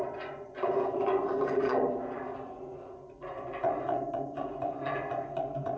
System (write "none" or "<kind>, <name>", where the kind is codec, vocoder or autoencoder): vocoder, Vocos